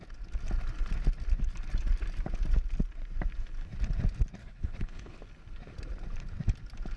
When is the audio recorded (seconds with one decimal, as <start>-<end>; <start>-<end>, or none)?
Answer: 0.0-4.4; 5.2-7.0